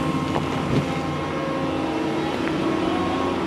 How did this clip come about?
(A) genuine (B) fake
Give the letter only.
A